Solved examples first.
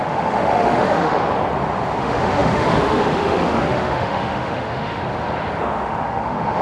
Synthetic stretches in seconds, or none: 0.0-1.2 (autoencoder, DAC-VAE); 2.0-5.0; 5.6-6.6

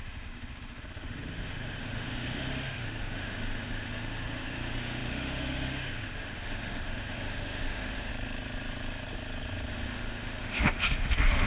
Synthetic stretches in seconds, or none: 0.0-8.1 (autoencoder, DAC-VAE); 9.7-11.5

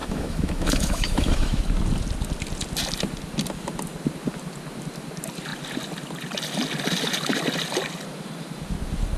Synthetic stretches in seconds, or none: 0.0-1.6 (autoencoder, DAC-VAE)

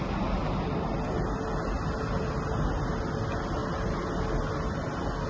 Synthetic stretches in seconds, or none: none

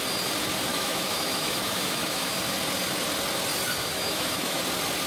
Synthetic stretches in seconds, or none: 0.7-2.3 (autoencoder, DAC-VAE); 3.8-4.6

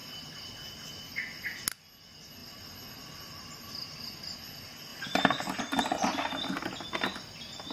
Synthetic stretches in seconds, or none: none

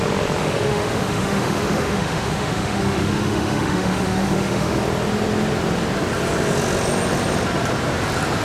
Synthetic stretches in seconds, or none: 0.4-4.8 (autoencoder, DAC-VAE)

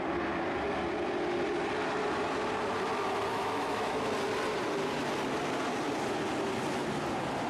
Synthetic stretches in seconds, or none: 3.3-4.0 (autoencoder, DAC-VAE)